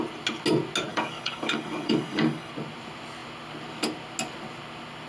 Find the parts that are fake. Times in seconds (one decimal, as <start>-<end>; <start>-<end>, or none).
0.9-2.5